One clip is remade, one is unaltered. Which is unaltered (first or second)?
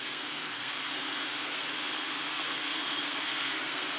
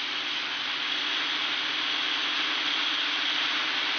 second